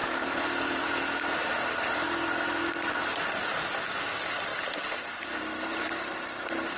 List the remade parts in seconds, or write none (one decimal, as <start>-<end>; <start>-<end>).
none